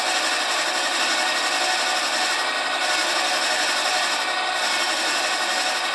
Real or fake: real